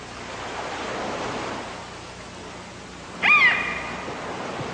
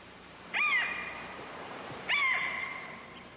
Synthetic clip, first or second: second